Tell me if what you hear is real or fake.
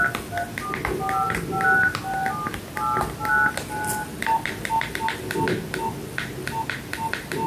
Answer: real